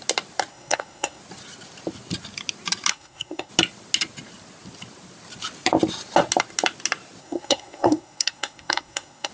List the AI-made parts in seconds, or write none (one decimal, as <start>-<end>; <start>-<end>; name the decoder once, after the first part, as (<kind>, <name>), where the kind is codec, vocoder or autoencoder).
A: 0.5-1.2 (codec, SNAC); 2.9-3.5; 7.2-9.3